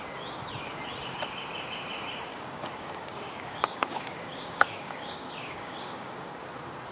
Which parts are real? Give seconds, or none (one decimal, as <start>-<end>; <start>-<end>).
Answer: 0.0-2.3; 6.4-6.9